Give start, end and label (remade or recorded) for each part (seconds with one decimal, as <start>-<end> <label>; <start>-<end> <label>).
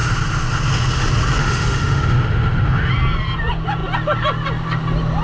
0.0-1.4 recorded; 1.4-2.9 remade; 2.9-5.2 recorded